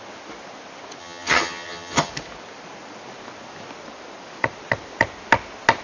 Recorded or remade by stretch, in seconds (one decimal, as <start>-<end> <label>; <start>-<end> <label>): 0.0-1.0 recorded; 1.0-2.1 remade; 2.1-5.8 recorded